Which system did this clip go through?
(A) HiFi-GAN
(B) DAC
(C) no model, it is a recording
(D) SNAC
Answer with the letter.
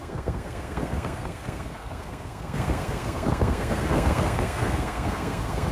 D